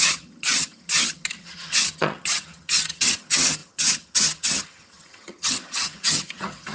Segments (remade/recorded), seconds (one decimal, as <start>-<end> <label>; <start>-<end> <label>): 0.0-6.7 remade